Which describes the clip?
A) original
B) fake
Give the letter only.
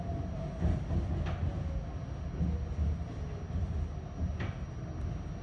A